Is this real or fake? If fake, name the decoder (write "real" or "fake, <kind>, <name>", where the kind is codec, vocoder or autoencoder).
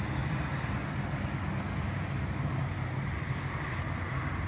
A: real